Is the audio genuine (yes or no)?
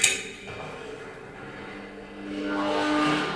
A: yes